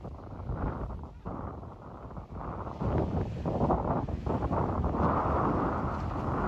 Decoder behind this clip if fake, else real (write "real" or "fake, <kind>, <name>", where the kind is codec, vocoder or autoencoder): real